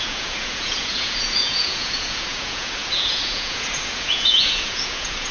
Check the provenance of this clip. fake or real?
fake